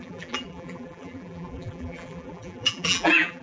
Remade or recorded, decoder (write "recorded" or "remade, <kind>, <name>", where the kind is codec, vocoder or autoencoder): remade, vocoder, BigVGAN v2